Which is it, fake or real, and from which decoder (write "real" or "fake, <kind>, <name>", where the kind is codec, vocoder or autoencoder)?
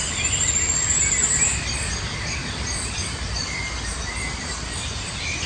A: real